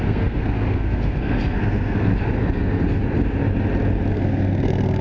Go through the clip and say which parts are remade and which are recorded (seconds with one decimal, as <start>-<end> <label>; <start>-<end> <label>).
0.0-2.1 remade; 2.1-4.1 recorded; 4.1-5.0 remade